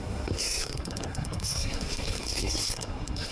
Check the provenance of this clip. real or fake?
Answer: fake